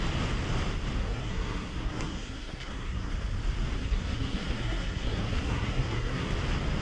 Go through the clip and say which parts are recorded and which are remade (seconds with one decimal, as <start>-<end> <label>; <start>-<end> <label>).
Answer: 0.0-1.0 recorded; 1.0-3.1 remade; 3.1-3.8 recorded; 3.8-6.3 remade; 6.3-6.8 recorded